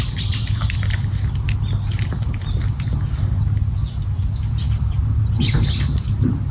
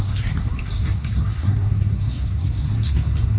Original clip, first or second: first